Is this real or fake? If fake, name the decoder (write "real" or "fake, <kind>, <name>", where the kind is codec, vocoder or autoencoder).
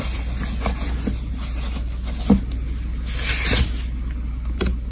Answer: real